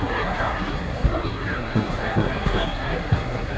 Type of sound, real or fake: fake